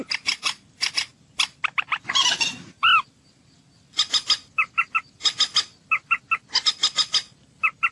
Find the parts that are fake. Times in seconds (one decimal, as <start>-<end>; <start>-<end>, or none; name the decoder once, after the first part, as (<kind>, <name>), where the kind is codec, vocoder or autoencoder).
none